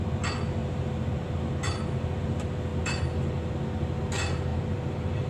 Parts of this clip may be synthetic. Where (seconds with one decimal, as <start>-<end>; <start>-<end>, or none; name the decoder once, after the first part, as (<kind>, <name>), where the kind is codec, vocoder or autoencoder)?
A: 4.5-5.3 (vocoder, BigVGAN v2)